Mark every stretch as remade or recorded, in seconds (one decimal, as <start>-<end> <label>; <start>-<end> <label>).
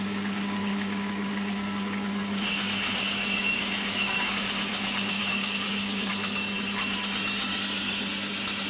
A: 0.0-6.1 remade; 6.1-8.7 recorded